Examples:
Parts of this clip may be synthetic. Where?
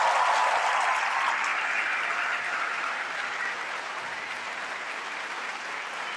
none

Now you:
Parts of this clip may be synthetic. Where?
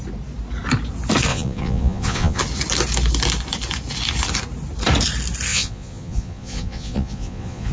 1.3-2.4; 5.5-7.7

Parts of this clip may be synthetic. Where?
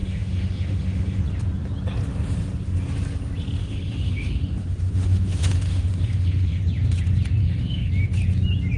0.0-1.2; 3.6-6.6; 7.4-7.9